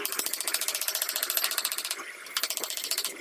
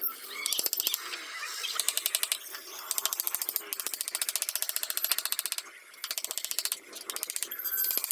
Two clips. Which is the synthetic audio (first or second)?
first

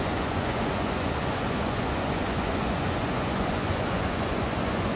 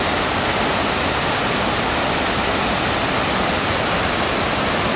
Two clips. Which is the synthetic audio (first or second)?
first